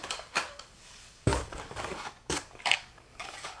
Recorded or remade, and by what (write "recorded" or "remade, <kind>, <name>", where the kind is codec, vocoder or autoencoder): remade, codec, DAC